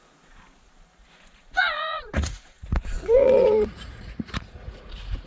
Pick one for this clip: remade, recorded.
remade